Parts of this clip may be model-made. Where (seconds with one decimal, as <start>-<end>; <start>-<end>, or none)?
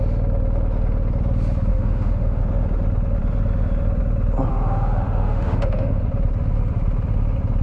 1.7-2.4; 4.5-6.0